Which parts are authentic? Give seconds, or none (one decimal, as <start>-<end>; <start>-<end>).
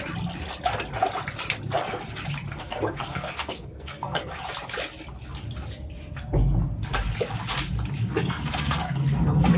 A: 0.0-2.6; 4.3-8.0